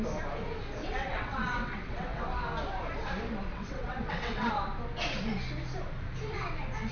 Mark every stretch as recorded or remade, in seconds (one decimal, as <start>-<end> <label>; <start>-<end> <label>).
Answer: 0.0-0.8 recorded; 0.8-2.2 remade; 2.2-3.5 recorded; 3.5-4.5 remade; 4.5-6.9 recorded